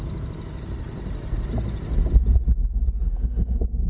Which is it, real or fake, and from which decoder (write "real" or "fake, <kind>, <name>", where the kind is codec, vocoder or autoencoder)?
real